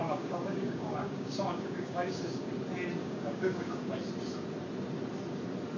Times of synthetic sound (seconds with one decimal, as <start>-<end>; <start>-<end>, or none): 0.0-2.5; 3.0-4.0